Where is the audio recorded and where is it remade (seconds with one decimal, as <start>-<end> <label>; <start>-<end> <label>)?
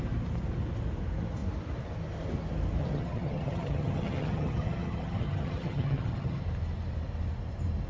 0.0-2.8 recorded; 2.8-6.4 remade; 6.4-7.9 recorded